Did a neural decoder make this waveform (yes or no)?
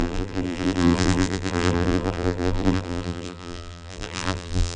yes